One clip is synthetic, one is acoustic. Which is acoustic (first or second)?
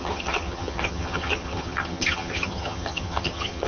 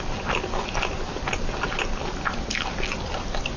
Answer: second